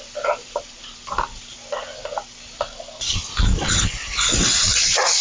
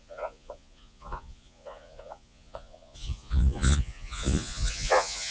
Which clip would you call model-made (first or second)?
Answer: second